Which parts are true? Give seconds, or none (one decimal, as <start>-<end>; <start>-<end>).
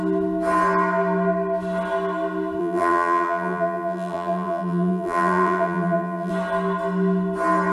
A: 0.0-2.6; 6.3-7.7